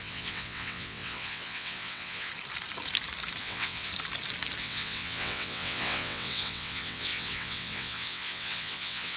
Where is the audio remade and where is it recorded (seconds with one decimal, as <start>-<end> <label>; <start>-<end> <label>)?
0.0-2.3 remade; 2.3-3.4 recorded; 3.4-3.9 remade; 3.9-4.6 recorded; 4.6-9.2 remade